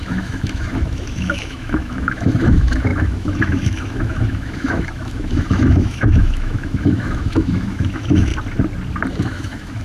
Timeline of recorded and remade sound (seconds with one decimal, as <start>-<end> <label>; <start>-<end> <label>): 0.0-8.3 remade; 8.3-9.1 recorded; 9.1-9.8 remade